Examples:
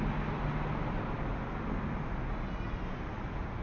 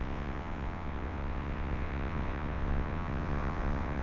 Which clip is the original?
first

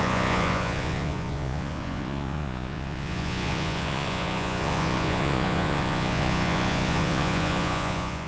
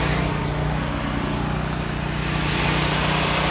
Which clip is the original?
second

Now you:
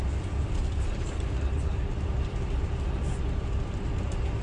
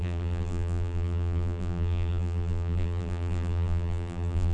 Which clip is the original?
first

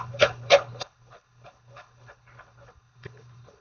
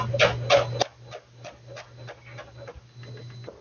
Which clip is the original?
second